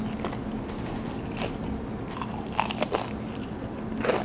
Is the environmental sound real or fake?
real